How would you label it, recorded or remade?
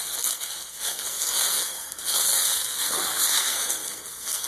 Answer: remade